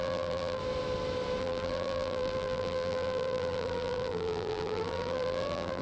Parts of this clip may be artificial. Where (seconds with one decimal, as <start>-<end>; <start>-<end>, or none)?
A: 0.0-0.6; 1.4-5.8